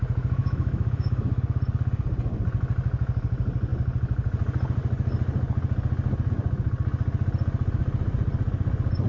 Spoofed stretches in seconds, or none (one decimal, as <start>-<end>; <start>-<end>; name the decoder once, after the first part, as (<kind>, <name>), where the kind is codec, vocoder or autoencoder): 0.4-1.4 (autoencoder, DAC-VAE)